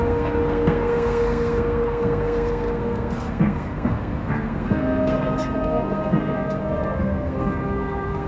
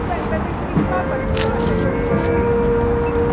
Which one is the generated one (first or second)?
first